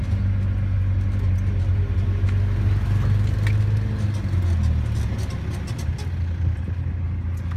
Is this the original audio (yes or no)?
yes